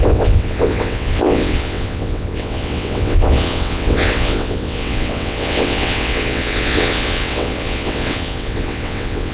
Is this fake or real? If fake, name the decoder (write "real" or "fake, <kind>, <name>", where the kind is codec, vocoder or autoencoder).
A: fake, vocoder, WaveNeXt